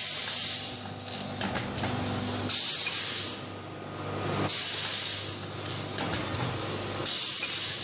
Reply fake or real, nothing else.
real